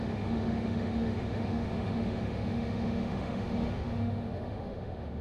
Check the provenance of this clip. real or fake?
fake